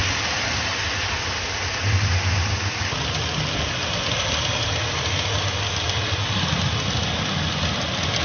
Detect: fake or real real